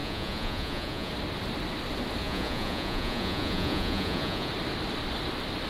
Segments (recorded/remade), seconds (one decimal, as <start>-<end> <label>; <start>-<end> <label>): 0.0-1.1 remade; 1.1-2.2 recorded; 2.2-4.5 remade; 4.5-5.7 recorded